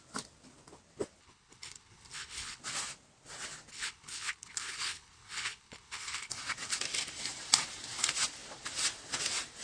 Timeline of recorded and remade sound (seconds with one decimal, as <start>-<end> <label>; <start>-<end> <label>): 0.0-1.2 recorded; 1.2-2.6 remade; 2.6-3.7 recorded; 3.7-6.3 remade; 6.3-9.6 recorded